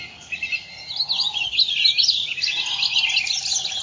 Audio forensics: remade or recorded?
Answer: recorded